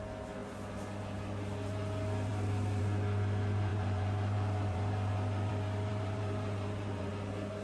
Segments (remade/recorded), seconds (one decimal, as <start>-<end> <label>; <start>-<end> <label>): 0.0-3.7 recorded; 3.7-5.5 remade; 5.5-5.9 recorded; 5.9-7.1 remade; 7.1-7.6 recorded